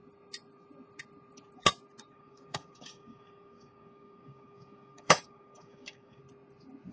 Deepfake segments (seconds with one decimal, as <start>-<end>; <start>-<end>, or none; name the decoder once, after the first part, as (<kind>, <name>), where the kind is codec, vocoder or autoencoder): 2.1-6.2 (codec, DAC)